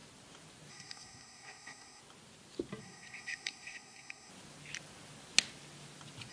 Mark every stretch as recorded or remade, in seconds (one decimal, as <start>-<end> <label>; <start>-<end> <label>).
0.0-0.7 recorded; 0.7-2.0 remade; 2.0-2.8 recorded; 2.8-4.3 remade; 4.3-6.3 recorded